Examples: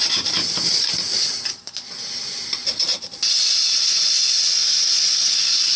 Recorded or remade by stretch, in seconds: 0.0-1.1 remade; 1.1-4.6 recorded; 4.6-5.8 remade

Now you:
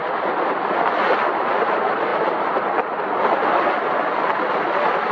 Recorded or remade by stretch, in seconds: 0.0-5.1 recorded

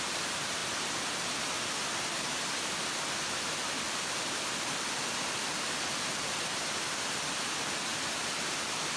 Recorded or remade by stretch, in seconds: 0.0-9.0 recorded